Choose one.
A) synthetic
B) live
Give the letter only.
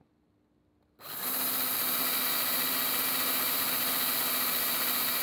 B